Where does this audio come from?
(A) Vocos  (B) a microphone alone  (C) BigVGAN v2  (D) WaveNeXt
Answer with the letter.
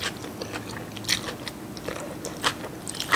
B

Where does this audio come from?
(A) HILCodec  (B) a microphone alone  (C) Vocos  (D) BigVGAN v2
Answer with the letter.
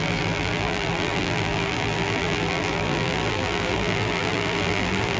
D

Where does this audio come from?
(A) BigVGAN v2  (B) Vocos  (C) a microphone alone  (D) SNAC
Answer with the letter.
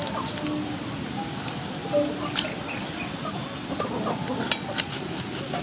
C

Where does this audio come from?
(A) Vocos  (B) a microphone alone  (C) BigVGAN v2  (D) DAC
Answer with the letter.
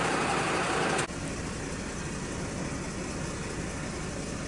B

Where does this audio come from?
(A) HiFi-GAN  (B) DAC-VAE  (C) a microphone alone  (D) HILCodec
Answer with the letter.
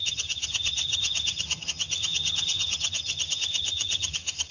A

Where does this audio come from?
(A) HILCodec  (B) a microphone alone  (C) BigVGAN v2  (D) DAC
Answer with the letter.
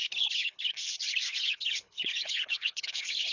A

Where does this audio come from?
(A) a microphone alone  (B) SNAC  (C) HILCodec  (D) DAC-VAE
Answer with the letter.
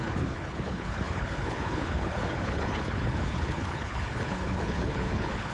C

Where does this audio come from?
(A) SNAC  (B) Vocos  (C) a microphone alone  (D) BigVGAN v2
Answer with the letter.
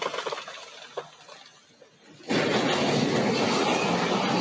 C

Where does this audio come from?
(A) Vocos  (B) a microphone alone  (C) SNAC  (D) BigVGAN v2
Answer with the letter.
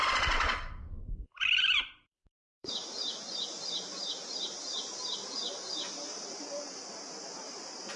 D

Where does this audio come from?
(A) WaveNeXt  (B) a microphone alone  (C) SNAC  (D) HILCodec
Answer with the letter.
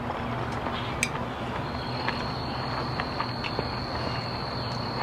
B